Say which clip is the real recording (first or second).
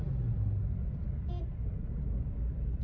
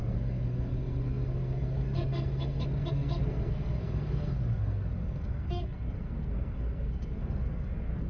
first